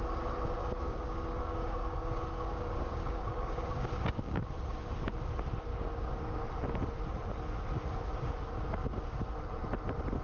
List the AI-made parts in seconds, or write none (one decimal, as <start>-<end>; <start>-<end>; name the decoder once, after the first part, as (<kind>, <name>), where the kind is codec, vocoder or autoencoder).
0.6-4.5 (codec, DAC); 5.7-6.3